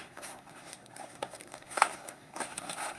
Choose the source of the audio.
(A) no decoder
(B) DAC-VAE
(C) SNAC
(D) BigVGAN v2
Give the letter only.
C